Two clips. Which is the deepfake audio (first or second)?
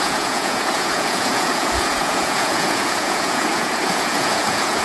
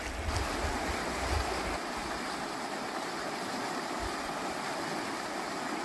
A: first